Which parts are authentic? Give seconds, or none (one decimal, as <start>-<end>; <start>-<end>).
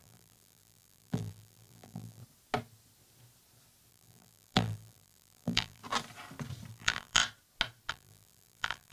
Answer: 2.2-3.9; 5.8-6.7; 7.2-7.9